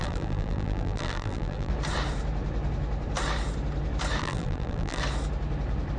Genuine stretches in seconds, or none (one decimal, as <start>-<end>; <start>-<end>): 1.7-4.2; 5.0-6.0